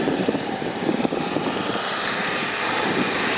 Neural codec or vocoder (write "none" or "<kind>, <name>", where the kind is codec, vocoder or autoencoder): vocoder, BigVGAN v2